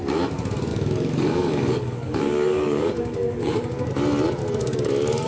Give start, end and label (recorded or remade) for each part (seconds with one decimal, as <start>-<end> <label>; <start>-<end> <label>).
0.0-0.7 recorded; 0.7-3.9 remade; 3.9-4.4 recorded; 4.4-5.3 remade